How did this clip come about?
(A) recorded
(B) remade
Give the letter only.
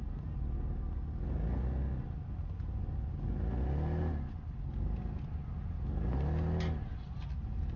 A